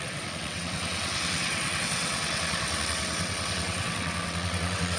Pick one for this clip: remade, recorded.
remade